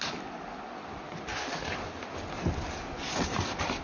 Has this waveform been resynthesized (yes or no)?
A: no